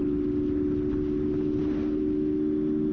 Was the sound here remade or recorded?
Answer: recorded